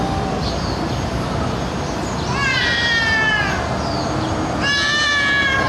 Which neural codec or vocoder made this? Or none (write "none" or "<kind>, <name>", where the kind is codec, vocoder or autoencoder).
none